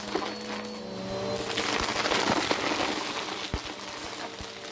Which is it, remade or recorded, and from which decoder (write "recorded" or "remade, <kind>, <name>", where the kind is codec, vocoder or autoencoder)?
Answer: recorded